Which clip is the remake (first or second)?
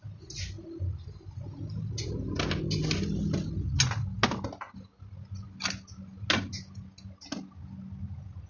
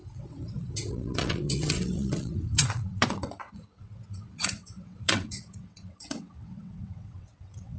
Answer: second